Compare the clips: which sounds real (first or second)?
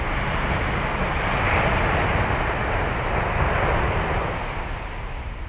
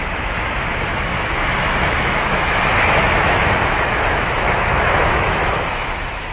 first